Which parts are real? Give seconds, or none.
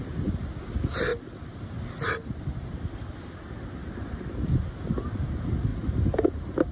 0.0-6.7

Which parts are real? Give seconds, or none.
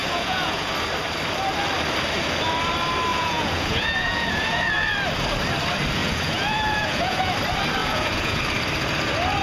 0.7-3.1; 4.7-6.0; 7.3-7.8; 8.4-9.4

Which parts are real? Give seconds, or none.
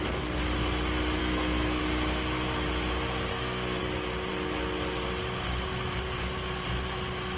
0.0-1.2; 1.8-3.3; 3.8-7.4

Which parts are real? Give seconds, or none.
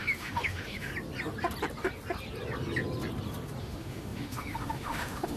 0.9-3.6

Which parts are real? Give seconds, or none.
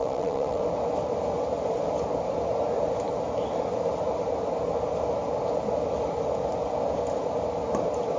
0.6-8.2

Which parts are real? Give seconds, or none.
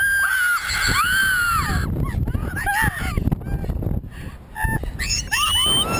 0.0-6.0